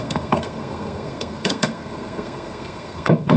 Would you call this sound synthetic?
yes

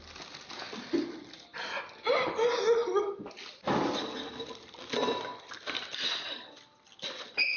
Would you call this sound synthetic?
no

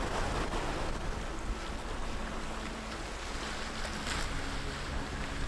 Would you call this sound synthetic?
no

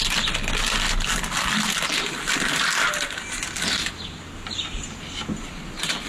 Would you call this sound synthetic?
no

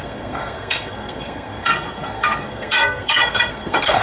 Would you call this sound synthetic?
yes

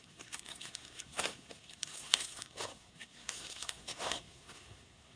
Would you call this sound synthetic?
yes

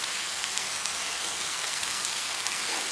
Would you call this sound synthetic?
yes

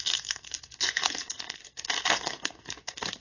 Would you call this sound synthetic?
yes